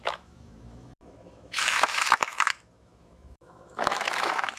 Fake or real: fake